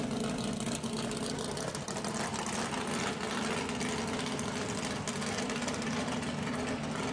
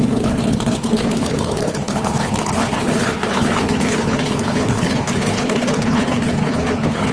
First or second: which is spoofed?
second